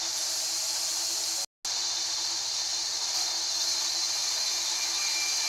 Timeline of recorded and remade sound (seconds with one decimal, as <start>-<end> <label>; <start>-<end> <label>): 0.0-5.5 recorded